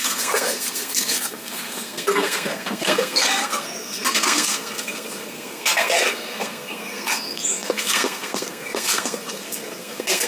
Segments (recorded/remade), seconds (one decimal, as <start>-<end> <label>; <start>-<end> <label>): 0.0-10.3 remade